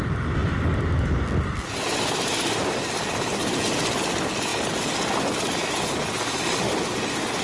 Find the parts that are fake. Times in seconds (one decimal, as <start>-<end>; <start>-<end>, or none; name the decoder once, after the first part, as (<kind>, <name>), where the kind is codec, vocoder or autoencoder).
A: none